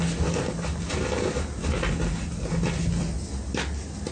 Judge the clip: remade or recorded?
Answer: recorded